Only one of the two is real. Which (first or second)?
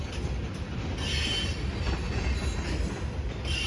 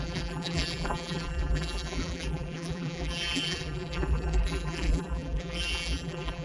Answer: first